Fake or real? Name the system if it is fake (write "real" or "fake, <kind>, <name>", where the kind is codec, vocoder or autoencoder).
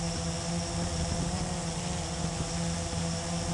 real